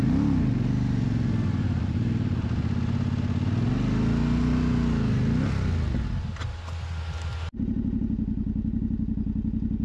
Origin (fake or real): real